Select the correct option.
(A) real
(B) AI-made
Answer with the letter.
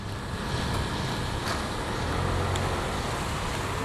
A